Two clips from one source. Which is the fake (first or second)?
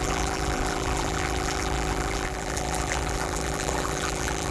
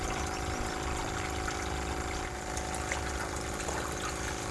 first